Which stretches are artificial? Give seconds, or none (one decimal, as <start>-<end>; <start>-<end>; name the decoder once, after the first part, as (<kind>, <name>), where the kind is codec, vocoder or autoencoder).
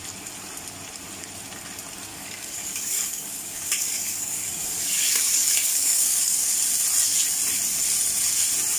2.1-6.5 (codec, DAC)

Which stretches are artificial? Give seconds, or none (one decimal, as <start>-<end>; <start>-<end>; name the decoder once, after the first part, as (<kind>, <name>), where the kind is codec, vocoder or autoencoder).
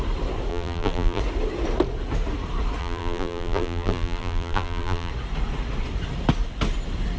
0.5-1.2 (vocoder, BigVGAN v2); 2.8-5.1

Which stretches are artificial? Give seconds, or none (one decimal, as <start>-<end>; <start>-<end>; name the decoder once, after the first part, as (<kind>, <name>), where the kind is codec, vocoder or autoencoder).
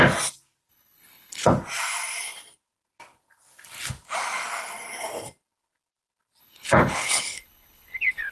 0.7-1.5 (codec, HILCodec); 6.4-8.3